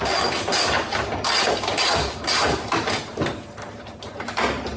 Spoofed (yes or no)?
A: no